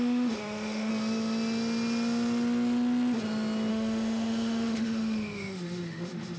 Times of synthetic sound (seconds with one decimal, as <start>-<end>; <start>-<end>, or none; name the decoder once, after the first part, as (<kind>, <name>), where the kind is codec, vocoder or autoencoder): 0.0-0.9 (autoencoder, DAC-VAE); 3.7-6.4